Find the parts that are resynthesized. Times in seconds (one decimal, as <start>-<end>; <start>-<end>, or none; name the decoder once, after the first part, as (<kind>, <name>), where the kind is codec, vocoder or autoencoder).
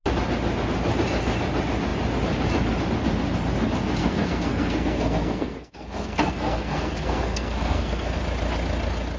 4.0-8.2 (codec, SNAC)